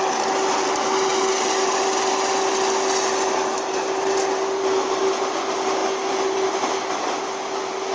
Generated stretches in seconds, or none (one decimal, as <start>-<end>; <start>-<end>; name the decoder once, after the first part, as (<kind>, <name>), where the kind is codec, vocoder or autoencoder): none